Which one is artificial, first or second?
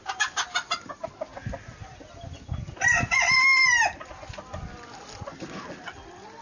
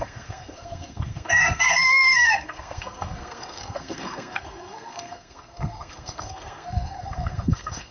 second